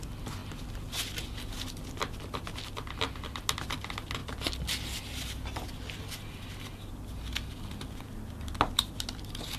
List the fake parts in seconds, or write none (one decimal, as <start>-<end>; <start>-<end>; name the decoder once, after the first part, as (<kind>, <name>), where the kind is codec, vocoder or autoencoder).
none